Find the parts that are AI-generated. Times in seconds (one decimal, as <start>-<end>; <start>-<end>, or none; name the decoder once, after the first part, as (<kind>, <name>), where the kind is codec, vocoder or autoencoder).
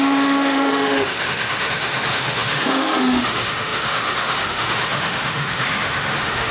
0.0-6.5 (autoencoder, DAC-VAE)